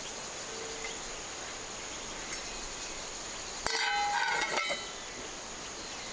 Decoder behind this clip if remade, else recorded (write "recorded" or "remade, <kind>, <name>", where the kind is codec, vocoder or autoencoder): recorded